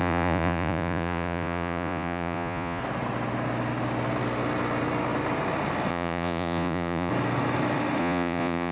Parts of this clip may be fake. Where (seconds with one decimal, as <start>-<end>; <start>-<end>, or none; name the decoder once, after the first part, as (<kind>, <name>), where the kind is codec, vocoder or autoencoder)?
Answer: 0.0-2.8 (vocoder, Vocos); 5.9-7.1; 8.0-8.7